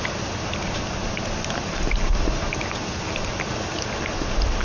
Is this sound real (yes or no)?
yes